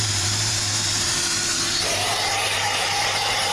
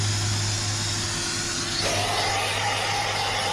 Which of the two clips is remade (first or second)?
first